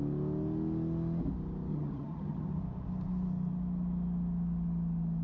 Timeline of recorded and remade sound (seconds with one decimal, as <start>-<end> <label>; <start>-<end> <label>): 0.0-1.7 recorded; 1.7-2.5 remade; 2.5-5.2 recorded